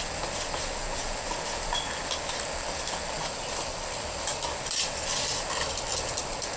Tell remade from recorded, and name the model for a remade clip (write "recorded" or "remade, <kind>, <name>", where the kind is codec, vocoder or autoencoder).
recorded